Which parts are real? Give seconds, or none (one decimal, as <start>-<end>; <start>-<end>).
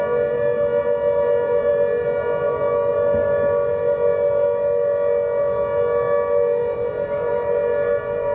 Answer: 0.0-8.3